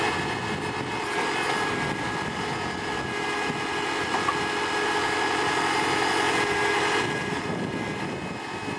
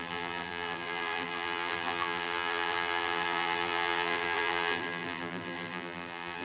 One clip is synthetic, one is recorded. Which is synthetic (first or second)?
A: second